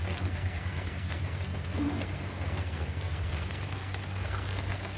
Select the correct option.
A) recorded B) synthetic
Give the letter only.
B